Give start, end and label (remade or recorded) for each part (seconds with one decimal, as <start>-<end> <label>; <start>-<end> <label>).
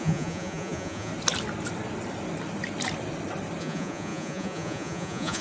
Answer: 0.0-1.1 remade; 1.1-3.6 recorded; 3.6-5.4 remade